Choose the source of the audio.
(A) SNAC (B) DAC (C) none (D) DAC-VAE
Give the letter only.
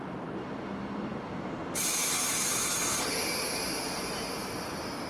C